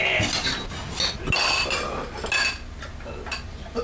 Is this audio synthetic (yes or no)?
no